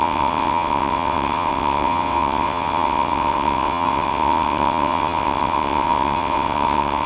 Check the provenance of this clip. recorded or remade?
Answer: remade